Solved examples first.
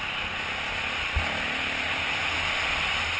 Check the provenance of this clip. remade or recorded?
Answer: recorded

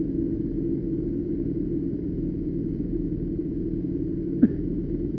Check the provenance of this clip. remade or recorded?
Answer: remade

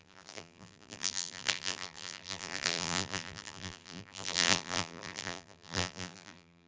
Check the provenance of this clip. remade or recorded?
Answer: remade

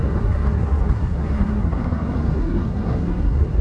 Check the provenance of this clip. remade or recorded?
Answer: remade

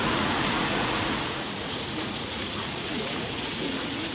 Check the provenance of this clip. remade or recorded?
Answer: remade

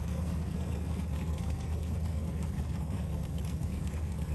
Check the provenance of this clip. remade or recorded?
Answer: remade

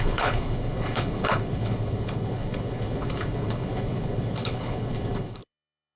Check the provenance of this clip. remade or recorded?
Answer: remade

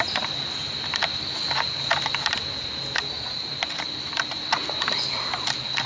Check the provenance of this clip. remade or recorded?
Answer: recorded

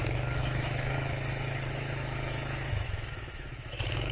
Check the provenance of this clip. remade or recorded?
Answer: remade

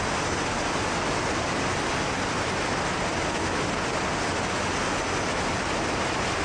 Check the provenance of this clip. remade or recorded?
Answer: recorded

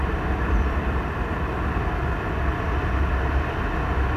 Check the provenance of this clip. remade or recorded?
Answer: recorded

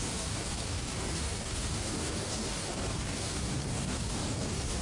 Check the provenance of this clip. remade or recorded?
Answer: remade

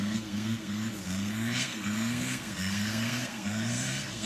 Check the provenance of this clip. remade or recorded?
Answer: remade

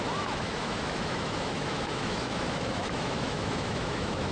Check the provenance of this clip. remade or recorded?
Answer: remade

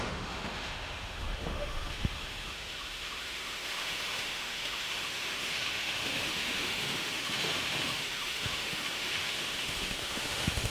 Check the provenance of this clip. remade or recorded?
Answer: remade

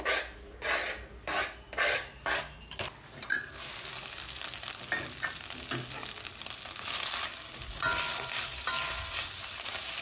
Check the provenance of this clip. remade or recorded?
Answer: recorded